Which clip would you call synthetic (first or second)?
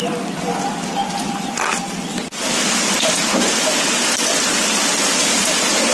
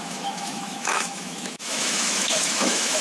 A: second